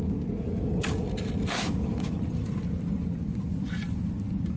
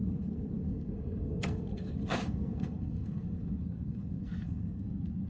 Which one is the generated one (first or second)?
second